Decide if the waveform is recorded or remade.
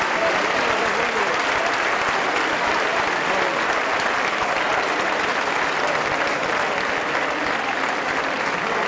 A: recorded